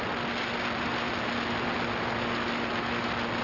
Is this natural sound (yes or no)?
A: yes